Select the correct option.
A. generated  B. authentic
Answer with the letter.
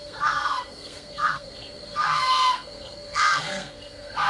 A